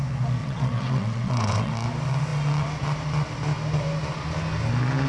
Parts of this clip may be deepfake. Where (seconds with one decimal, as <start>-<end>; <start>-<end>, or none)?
0.4-1.7